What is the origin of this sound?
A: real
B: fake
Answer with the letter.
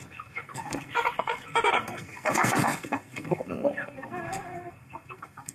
B